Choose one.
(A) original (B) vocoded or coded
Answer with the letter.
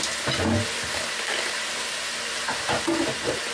A